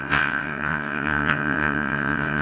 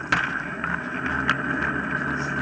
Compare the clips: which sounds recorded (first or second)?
second